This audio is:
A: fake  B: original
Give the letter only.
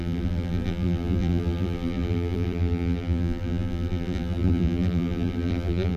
A